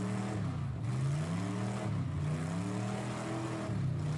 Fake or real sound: real